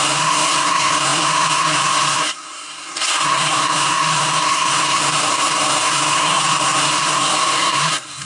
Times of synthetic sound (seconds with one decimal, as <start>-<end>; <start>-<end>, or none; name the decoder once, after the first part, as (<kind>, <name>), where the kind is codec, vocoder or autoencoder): 0.0-8.3 (codec, SNAC)